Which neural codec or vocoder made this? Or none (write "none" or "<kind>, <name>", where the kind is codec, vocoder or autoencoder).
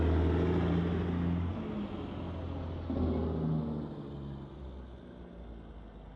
none